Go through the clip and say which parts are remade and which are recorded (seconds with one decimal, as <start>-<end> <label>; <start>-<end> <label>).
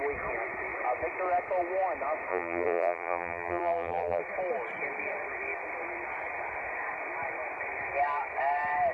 0.0-2.3 recorded; 2.3-4.2 remade; 4.2-8.9 recorded